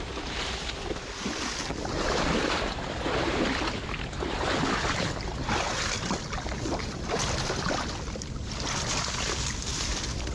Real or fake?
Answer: real